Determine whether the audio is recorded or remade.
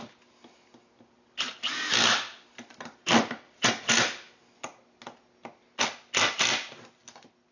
recorded